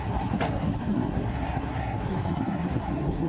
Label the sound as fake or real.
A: fake